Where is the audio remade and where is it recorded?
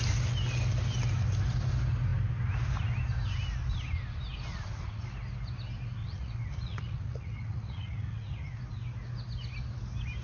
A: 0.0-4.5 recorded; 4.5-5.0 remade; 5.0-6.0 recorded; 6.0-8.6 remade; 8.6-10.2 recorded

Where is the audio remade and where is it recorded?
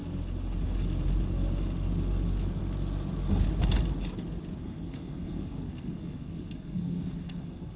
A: 0.0-4.6 recorded; 4.6-7.8 remade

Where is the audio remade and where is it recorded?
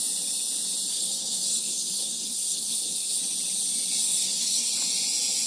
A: 0.0-0.9 recorded; 0.9-3.2 remade; 3.2-4.0 recorded; 4.0-4.7 remade; 4.7-5.5 recorded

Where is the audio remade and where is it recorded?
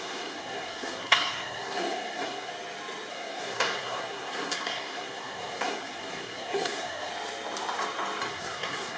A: 0.0-2.5 remade; 2.5-3.1 recorded; 3.1-7.1 remade; 7.1-8.3 recorded; 8.3-9.0 remade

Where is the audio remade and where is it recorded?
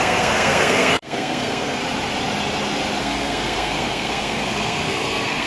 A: 0.0-1.8 remade; 1.8-3.0 recorded; 3.0-5.5 remade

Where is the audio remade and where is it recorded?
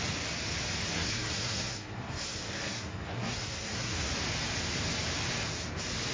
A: 0.0-0.9 recorded; 0.9-4.1 remade; 4.1-6.1 recorded